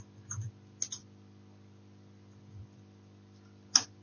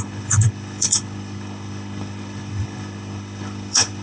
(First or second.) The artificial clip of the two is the second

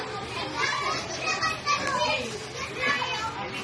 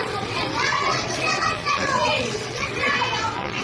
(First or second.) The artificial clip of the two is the second